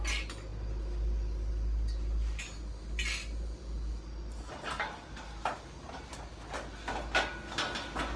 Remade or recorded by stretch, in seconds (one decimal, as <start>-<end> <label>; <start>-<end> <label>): 0.0-8.2 recorded

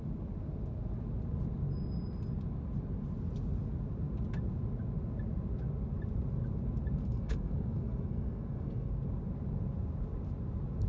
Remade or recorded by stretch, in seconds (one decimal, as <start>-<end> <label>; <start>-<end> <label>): 0.0-7.0 recorded; 7.0-8.9 remade; 8.9-10.9 recorded